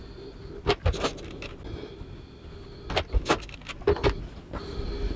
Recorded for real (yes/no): yes